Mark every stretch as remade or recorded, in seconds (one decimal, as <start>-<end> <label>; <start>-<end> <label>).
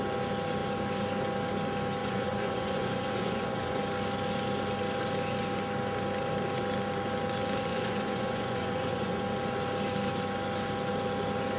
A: 0.0-2.0 recorded; 2.0-3.8 remade; 3.8-7.7 recorded; 7.7-9.2 remade; 9.2-11.6 recorded